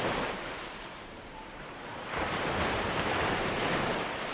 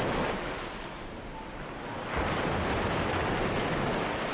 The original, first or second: second